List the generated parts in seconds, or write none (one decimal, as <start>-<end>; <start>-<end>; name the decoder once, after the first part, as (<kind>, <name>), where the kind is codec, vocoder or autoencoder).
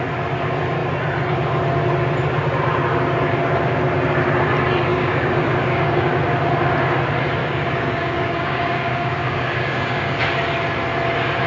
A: 4.9-6.1 (codec, DAC); 7.4-10.2